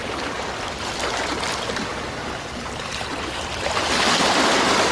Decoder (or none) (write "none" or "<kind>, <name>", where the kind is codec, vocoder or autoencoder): none